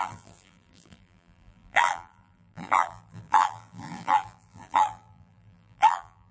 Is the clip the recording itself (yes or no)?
no